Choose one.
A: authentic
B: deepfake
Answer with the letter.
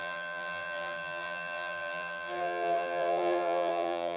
B